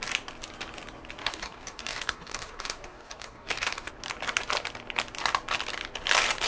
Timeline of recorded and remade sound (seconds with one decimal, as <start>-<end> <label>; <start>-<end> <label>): 0.0-1.2 recorded; 1.2-3.9 remade; 3.9-6.5 recorded